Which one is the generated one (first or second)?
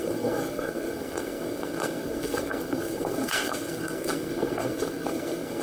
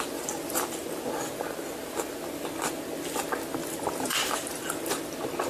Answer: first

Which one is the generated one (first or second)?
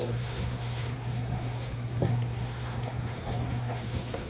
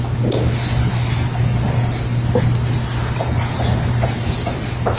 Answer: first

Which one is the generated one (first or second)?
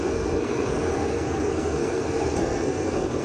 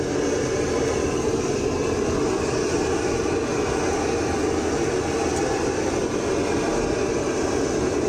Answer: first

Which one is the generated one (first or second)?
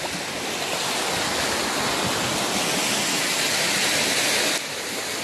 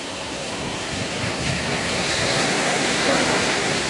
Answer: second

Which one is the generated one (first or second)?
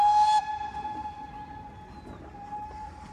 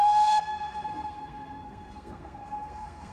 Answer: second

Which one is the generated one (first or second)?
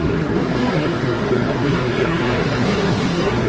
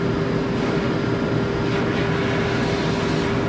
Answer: first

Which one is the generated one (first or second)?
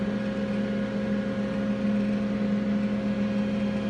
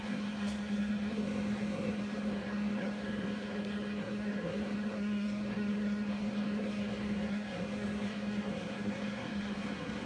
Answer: second